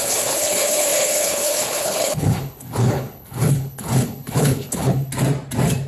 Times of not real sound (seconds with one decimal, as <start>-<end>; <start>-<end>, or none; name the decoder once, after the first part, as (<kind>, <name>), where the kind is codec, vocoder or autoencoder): 0.0-5.1 (codec, HILCodec)